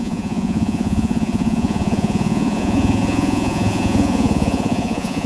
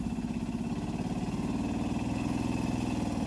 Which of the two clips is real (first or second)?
second